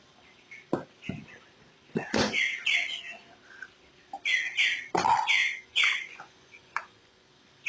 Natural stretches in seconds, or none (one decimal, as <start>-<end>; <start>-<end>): 0.0-5.4; 7.3-7.7